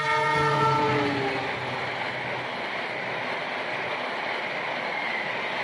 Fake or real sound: real